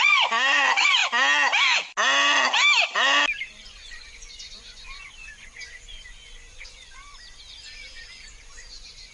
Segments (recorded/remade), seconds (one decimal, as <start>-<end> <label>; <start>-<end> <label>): 0.0-1.0 remade; 1.0-3.5 recorded; 3.5-9.1 remade